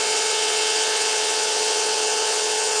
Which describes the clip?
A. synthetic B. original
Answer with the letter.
A